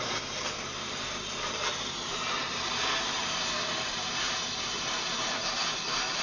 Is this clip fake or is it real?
fake